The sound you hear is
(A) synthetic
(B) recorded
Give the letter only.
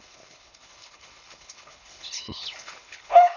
A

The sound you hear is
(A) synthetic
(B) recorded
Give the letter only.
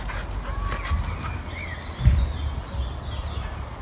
B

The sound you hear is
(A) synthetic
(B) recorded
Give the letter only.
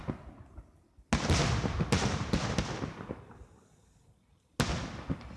B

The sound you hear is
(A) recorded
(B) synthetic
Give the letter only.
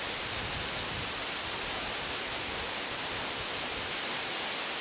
A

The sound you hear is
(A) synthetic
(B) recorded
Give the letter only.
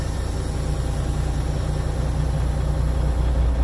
B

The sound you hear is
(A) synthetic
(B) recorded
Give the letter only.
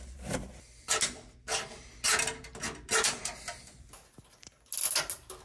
B